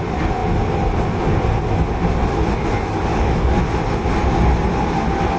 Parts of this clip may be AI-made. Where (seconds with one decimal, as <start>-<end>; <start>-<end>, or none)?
3.1-3.6